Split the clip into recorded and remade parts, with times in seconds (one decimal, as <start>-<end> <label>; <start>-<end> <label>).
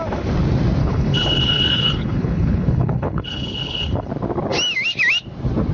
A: 0.0-0.8 recorded; 0.8-4.1 remade; 4.1-5.7 recorded